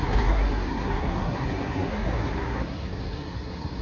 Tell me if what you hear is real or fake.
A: fake